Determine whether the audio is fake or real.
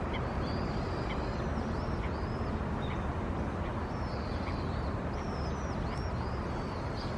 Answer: real